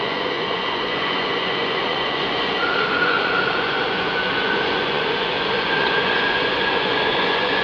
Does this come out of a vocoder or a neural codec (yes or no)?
yes